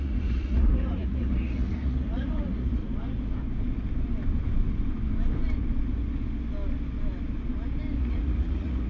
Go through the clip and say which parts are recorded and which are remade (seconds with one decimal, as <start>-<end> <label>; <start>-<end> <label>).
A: 0.0-2.8 remade; 2.8-8.0 recorded; 8.0-8.9 remade